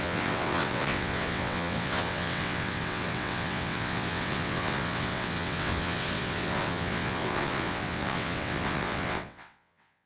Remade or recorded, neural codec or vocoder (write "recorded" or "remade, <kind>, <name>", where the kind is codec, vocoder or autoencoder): remade, vocoder, WaveNeXt